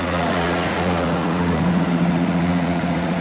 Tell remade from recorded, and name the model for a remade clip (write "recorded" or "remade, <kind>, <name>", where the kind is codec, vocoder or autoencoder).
remade, vocoder, Vocos